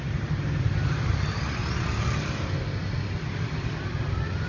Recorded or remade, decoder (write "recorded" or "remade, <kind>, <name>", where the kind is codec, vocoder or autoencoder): recorded